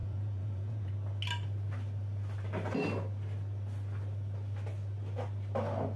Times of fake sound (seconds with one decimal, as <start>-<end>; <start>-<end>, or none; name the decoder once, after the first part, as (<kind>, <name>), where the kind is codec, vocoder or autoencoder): 0.0-0.9 (vocoder, Vocos)